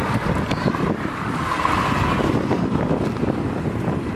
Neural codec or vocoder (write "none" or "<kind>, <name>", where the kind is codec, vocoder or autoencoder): none